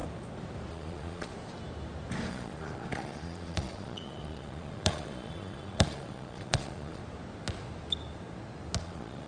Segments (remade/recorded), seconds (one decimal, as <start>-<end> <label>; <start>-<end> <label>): 0.0-0.7 recorded; 0.7-1.3 remade; 1.3-2.3 recorded; 2.3-7.0 remade; 7.0-8.8 recorded; 8.8-9.3 remade

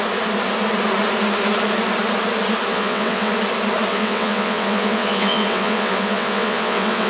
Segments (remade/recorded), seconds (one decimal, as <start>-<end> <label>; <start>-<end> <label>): 0.0-2.7 recorded; 2.7-3.3 remade; 3.3-3.9 recorded; 3.9-7.1 remade

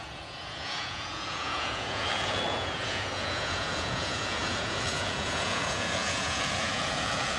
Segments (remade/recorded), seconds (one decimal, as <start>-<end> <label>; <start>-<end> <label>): 0.0-7.4 remade

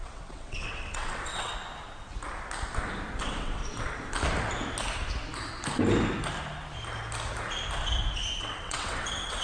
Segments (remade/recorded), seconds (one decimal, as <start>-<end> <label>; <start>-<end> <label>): 0.0-1.5 remade; 1.5-3.2 recorded; 3.2-3.6 remade; 3.6-8.4 recorded; 8.4-9.4 remade

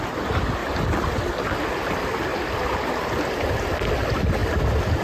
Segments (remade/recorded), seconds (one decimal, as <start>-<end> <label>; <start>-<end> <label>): 0.0-2.3 recorded; 2.3-3.0 remade; 3.0-5.0 recorded

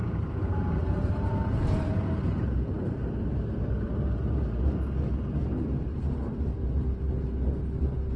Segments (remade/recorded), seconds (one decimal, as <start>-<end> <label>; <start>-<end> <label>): 0.0-3.9 remade; 3.9-8.2 recorded

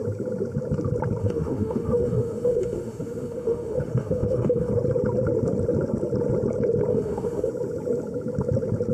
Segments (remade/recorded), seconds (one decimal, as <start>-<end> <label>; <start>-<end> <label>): 0.0-1.2 recorded; 1.2-4.7 remade; 4.7-6.9 recorded; 6.9-7.5 remade; 7.5-8.9 recorded

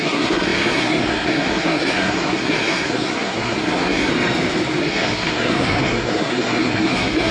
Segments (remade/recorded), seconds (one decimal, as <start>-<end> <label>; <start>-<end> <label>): 0.0-4.1 remade; 4.1-4.8 recorded; 4.8-7.3 remade